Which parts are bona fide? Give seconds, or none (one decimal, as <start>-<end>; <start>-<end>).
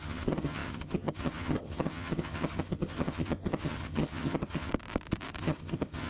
4.7-5.4